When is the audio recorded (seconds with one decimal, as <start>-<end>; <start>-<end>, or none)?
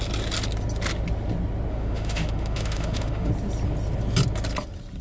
0.0-1.7; 3.3-5.0